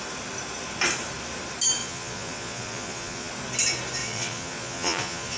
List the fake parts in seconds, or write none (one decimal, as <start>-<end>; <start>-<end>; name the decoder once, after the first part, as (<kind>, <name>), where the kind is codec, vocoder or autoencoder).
1.8-3.3 (vocoder, Vocos); 4.0-5.4